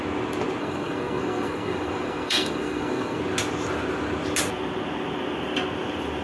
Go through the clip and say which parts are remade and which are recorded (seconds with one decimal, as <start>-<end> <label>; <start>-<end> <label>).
0.0-0.6 recorded; 0.6-3.2 remade; 3.2-6.2 recorded